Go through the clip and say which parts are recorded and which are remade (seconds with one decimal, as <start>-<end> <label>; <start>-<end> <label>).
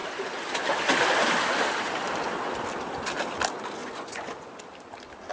0.0-3.8 recorded; 3.8-4.6 remade; 4.6-5.3 recorded